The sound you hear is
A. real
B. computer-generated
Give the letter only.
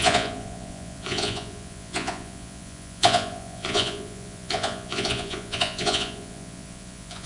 B